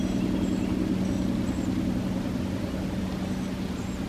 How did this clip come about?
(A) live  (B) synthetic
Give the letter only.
A